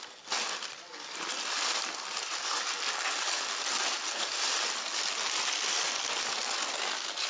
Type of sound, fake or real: real